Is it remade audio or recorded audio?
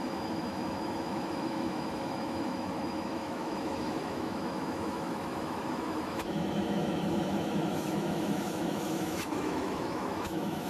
remade